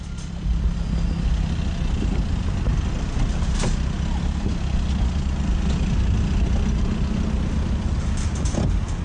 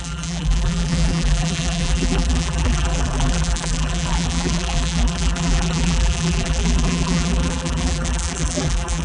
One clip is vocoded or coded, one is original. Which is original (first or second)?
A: first